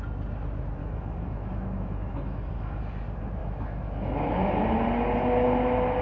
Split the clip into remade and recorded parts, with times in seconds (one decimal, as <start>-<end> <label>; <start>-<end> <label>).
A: 0.0-0.8 recorded; 0.8-2.8 remade; 2.8-3.4 recorded; 3.4-4.4 remade; 4.4-6.0 recorded